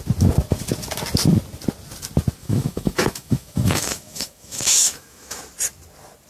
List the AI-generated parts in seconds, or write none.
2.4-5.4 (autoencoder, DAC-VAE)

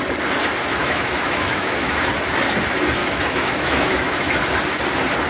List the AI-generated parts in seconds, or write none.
0.8-2.1 (autoencoder, DAC-VAE); 3.0-4.3

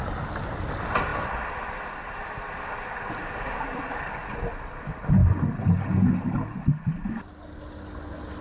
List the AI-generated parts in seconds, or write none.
none

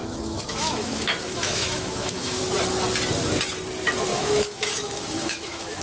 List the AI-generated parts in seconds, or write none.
0.0-2.4 (autoencoder, DAC-VAE); 4.1-5.8